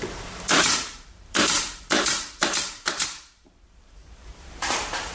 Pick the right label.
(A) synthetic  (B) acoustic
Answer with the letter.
A